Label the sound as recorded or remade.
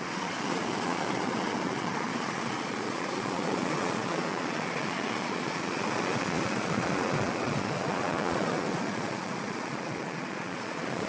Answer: remade